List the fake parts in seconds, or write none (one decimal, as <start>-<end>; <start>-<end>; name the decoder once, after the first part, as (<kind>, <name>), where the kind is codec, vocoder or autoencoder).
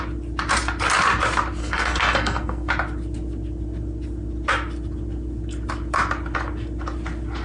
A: 1.6-2.7 (codec, SNAC)